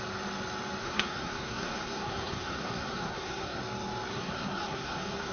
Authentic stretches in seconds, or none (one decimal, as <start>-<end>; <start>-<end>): 0.0-0.8; 3.6-4.1